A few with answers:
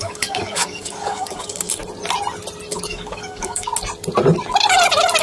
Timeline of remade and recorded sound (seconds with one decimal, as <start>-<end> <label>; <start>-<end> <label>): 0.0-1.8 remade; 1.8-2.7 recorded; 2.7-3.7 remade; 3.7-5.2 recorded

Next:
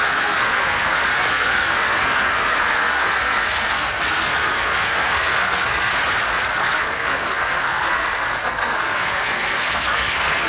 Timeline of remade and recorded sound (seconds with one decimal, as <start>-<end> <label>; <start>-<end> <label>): 0.0-5.9 remade; 5.9-6.5 recorded; 6.5-10.5 remade

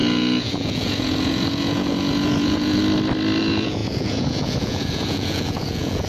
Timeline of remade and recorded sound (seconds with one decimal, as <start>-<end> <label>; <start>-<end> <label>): 0.0-2.8 remade; 2.8-3.4 recorded; 3.4-6.1 remade

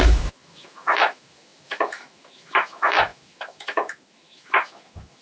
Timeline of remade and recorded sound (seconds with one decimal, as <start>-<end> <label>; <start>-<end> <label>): 0.0-5.2 remade